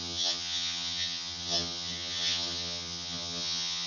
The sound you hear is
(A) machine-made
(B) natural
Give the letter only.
A